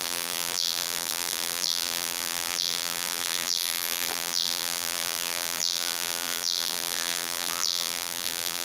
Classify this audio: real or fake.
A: fake